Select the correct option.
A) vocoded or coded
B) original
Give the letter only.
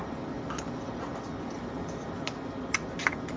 B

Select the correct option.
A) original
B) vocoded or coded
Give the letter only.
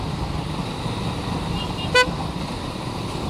A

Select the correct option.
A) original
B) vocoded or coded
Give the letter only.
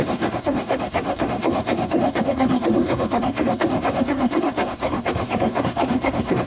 B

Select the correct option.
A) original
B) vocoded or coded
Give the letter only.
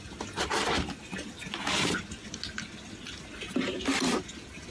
A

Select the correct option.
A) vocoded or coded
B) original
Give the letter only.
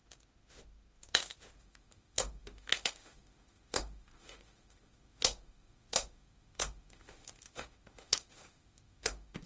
A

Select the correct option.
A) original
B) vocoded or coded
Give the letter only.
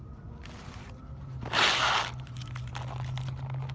A